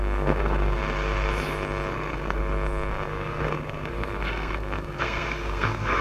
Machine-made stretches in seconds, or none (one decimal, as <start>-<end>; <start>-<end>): 0.0-0.8; 1.9-2.4; 2.9-6.0